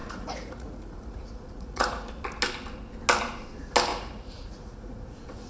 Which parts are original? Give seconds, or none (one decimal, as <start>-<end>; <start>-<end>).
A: 2.1-3.9